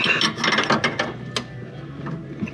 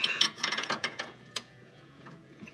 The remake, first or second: second